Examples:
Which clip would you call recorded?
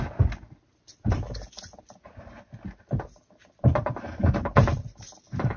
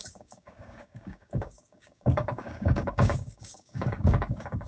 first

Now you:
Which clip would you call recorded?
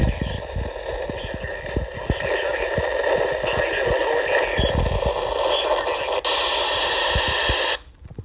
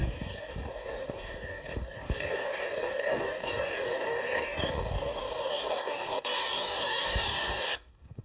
first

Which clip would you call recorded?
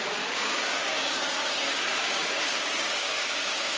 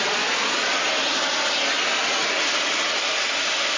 second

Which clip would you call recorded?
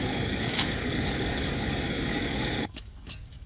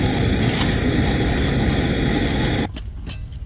second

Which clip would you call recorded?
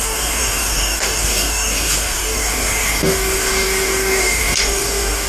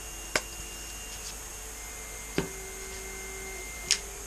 second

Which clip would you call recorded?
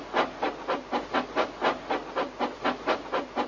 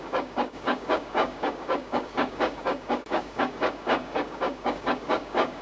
first